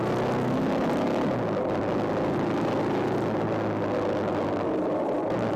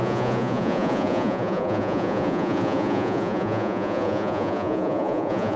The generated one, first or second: second